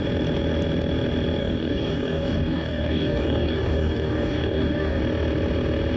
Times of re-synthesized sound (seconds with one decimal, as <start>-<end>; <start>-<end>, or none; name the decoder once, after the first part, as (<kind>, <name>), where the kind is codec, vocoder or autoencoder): 1.4-5.0 (codec, DAC)

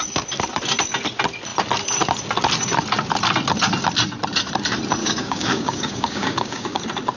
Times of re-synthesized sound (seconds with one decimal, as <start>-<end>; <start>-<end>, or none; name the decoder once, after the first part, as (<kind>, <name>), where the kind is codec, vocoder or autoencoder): 5.0-6.8 (codec, DAC)

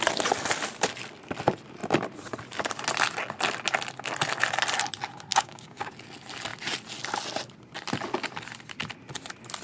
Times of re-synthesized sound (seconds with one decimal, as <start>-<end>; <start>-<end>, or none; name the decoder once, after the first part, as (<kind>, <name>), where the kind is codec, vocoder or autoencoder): 5.3-5.9 (codec, DAC)

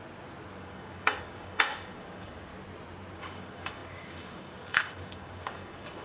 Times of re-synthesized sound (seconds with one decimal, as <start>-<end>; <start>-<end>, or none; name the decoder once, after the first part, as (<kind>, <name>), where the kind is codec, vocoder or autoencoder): 0.6-2.5 (codec, DAC); 3.2-6.0